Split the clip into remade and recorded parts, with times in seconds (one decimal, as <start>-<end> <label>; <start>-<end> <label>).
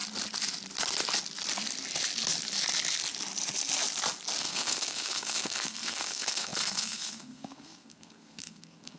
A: 0.0-4.4 recorded; 4.4-9.0 remade